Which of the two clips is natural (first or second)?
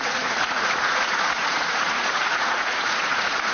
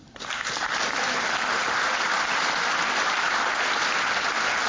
second